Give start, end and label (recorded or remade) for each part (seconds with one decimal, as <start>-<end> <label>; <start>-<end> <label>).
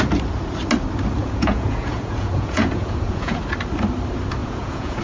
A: 0.0-1.2 recorded; 1.2-3.4 remade; 3.4-4.4 recorded; 4.4-5.0 remade